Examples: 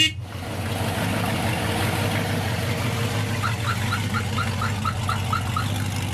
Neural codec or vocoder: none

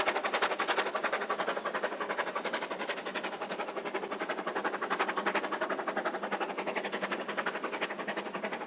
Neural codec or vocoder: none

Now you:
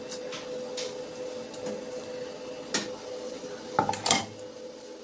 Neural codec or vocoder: none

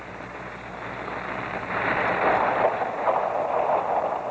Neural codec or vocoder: none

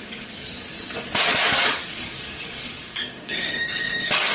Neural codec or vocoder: codec, DAC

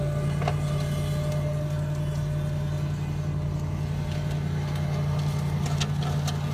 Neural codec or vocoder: none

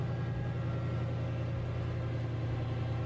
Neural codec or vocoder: none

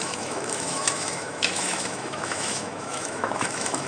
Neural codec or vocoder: autoencoder, DAC-VAE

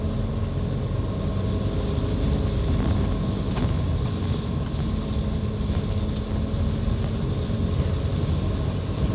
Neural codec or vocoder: none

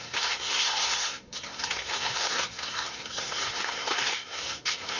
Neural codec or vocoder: codec, SNAC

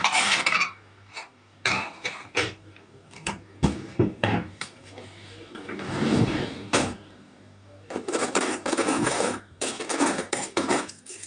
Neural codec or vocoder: codec, DAC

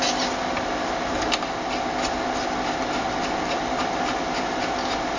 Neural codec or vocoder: none